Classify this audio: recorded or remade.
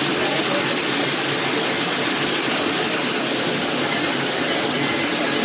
recorded